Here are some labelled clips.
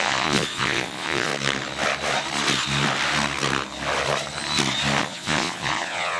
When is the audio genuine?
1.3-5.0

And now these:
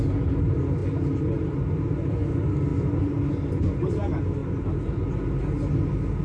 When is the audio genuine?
0.0-6.2

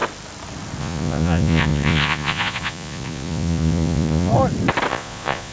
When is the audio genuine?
0.0-0.8; 4.3-4.9